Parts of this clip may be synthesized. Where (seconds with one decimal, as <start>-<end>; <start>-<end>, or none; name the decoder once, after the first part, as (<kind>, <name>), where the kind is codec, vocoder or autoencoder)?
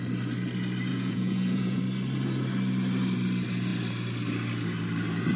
0.9-1.8 (vocoder, Vocos)